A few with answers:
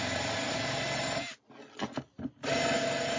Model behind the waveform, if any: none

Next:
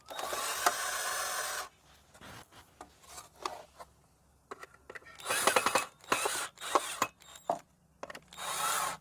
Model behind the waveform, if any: none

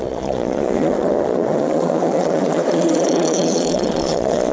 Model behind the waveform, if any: vocoder, Vocos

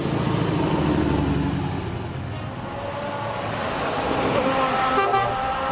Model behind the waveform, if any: none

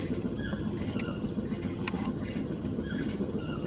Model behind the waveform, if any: vocoder, HiFi-GAN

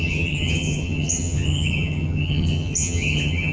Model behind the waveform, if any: vocoder, HiFi-GAN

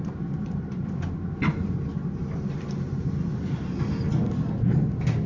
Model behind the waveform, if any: none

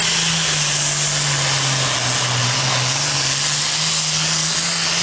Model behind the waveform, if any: none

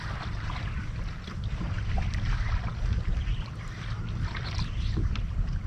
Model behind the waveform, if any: vocoder, BigVGAN v2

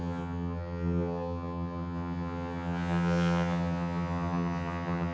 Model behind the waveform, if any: vocoder, HiFi-GAN